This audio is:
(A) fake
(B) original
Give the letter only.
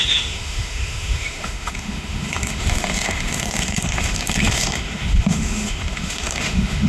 A